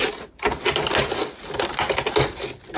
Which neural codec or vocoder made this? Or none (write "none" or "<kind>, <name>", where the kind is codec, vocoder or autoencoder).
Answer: none